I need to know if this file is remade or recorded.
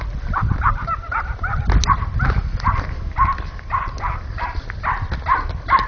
recorded